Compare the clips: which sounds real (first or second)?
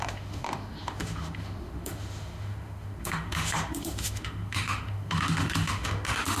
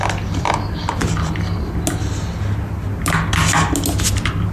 second